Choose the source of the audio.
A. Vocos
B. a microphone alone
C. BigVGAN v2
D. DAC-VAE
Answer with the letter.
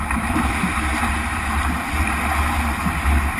B